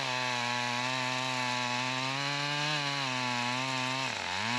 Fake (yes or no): no